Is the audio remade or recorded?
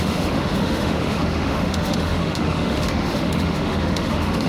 remade